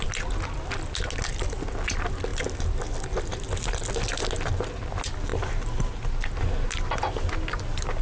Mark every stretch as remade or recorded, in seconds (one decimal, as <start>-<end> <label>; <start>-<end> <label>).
0.0-8.0 recorded